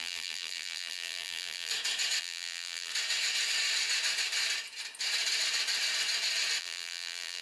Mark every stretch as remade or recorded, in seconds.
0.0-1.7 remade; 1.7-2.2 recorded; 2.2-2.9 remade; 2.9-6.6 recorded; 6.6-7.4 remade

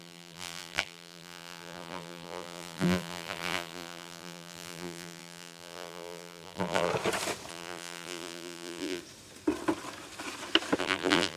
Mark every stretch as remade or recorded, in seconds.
0.0-6.9 remade; 6.9-7.5 recorded; 7.5-9.0 remade; 9.0-10.8 recorded; 10.8-11.4 remade

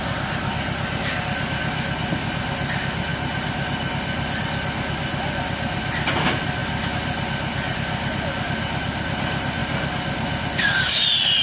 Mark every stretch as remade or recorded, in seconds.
0.0-11.4 recorded

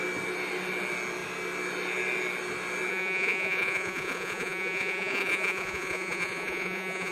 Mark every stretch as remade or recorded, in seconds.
0.0-2.9 recorded; 2.9-7.1 remade